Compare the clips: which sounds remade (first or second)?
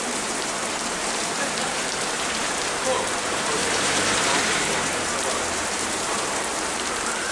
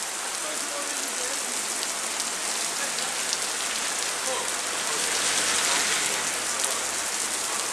first